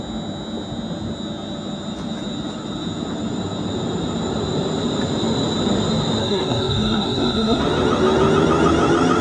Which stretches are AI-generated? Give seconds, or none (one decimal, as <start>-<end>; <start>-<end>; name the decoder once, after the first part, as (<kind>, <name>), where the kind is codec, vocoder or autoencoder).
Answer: 6.2-7.6 (codec, SNAC)